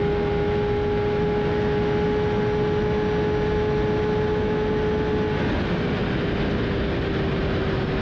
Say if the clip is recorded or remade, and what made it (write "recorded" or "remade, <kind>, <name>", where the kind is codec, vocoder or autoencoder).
recorded